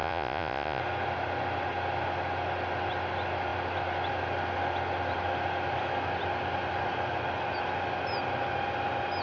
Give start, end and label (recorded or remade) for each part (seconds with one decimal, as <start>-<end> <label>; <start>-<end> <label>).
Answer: 0.0-0.8 remade; 0.8-9.2 recorded